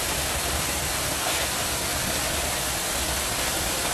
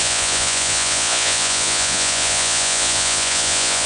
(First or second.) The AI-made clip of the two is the second